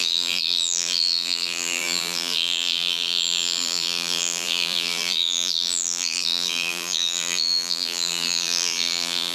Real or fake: fake